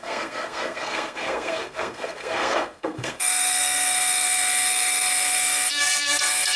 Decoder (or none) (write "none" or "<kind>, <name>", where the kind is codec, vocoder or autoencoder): codec, SNAC